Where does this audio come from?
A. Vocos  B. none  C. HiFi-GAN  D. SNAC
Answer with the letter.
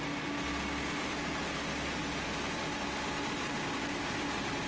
B